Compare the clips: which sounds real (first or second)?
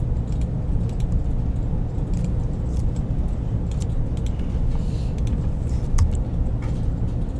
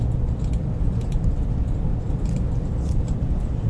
first